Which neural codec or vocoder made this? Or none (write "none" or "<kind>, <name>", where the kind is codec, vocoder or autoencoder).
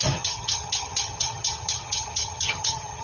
vocoder, HiFi-GAN